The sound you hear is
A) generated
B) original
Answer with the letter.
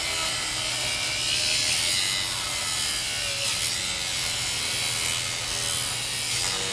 B